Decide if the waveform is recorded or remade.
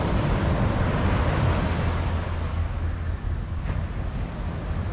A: recorded